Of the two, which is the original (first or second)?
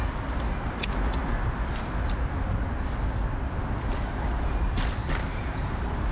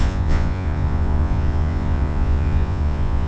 first